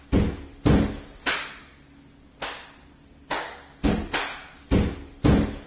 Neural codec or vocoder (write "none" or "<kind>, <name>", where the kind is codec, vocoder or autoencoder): none